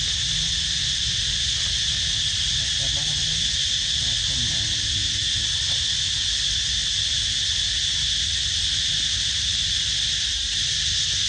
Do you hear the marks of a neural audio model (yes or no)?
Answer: no